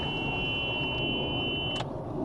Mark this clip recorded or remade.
recorded